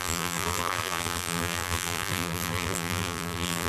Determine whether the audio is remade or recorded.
remade